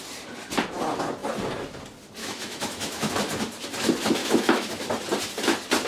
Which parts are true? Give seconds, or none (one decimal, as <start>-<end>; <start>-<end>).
0.0-2.2; 3.1-4.2; 4.9-5.9